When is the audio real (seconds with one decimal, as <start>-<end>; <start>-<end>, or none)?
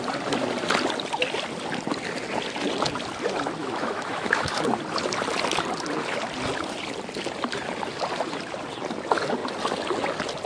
0.0-3.6; 4.6-10.5